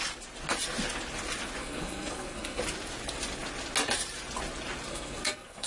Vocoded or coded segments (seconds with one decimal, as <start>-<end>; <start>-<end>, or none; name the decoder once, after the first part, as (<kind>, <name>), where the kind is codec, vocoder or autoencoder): 1.6-2.6 (codec, SNAC); 4.9-5.7